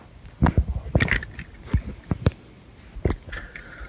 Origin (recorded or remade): recorded